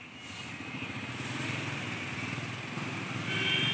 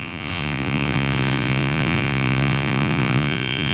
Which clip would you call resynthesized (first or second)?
second